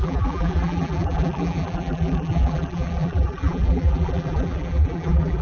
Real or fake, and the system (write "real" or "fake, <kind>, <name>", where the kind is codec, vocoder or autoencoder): fake, vocoder, BigVGAN v2